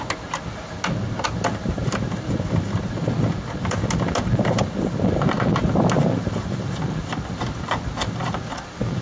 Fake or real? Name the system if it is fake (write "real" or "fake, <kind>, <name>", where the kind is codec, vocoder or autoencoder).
real